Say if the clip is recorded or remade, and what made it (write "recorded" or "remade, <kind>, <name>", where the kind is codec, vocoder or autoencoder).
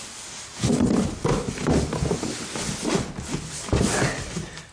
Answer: recorded